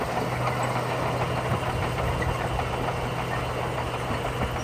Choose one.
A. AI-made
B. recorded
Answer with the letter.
B